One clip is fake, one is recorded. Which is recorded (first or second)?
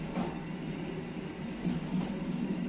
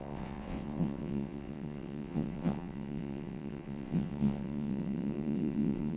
first